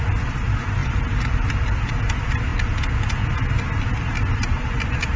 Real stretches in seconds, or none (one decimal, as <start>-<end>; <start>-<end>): 0.0-5.2